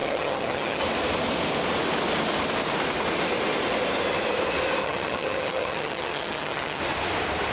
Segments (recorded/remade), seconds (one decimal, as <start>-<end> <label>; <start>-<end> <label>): 0.0-0.8 remade; 0.8-4.8 recorded; 4.8-6.8 remade; 6.8-7.5 recorded

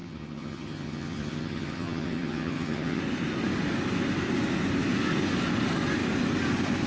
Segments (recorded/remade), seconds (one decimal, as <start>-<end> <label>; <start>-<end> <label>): 0.0-3.0 remade; 3.0-6.9 recorded

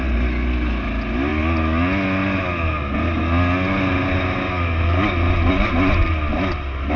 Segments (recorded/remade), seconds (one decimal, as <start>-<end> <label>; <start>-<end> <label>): 0.0-7.0 recorded

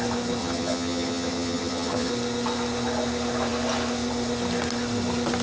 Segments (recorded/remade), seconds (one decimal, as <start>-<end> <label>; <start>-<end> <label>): 0.0-0.4 recorded; 0.4-2.1 remade; 2.1-5.4 recorded

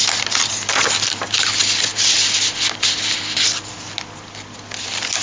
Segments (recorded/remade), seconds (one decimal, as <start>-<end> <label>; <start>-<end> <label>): 0.0-5.2 recorded

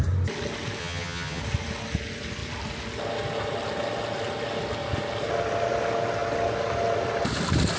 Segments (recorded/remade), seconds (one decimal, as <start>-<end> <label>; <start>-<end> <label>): 0.0-0.8 recorded; 0.8-1.4 remade; 1.4-7.8 recorded

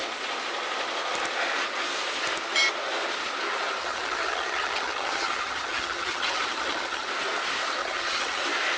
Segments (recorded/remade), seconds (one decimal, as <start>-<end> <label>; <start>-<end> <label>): 0.0-3.8 recorded; 3.8-7.1 remade; 7.1-7.8 recorded; 7.8-8.4 remade; 8.4-8.8 recorded

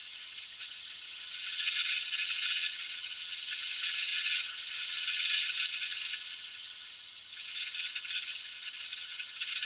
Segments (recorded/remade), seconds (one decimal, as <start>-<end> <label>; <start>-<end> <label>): 0.0-9.6 remade